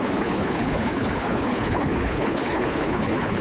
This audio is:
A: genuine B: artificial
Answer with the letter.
B